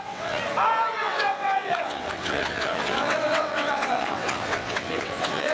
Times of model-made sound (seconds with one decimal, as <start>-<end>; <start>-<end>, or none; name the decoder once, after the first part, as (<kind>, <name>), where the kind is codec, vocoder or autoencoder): 0.0-0.4 (vocoder, WaveNeXt); 1.0-5.5